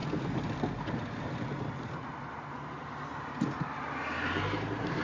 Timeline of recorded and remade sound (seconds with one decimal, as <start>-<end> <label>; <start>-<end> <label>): 0.0-5.0 recorded